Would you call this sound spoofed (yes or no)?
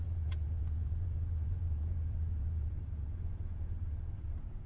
yes